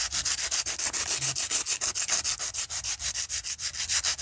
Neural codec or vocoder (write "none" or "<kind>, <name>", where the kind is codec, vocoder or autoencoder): none